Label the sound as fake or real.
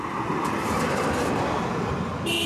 real